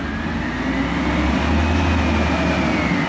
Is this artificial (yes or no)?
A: no